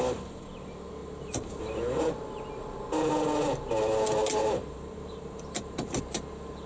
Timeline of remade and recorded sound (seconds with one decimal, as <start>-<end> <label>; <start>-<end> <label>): 0.0-1.0 recorded; 1.0-1.6 remade; 1.6-4.4 recorded; 4.4-6.0 remade; 6.0-6.7 recorded